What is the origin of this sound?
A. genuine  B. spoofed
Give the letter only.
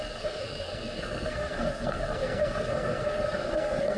B